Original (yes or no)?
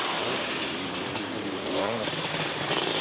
no